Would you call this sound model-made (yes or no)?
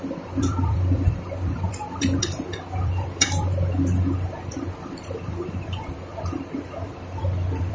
yes